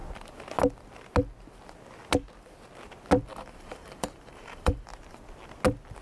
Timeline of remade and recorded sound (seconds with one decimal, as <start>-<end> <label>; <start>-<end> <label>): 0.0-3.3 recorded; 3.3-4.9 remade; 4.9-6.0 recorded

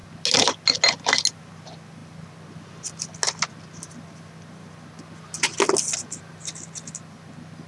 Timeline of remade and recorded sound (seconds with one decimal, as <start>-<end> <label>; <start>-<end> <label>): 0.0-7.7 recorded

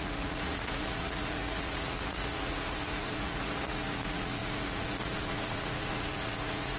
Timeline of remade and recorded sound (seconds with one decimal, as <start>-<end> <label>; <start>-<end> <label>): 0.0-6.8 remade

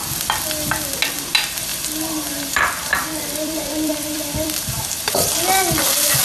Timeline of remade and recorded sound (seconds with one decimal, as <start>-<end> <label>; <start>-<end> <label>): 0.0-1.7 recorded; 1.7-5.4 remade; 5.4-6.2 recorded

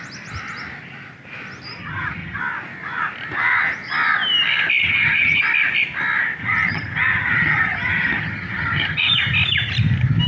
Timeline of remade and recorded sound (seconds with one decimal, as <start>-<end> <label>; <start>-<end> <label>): 0.0-1.8 recorded; 1.8-2.4 remade; 2.4-4.8 recorded; 4.8-5.4 remade; 5.4-6.4 recorded; 6.4-9.2 remade; 9.2-10.3 recorded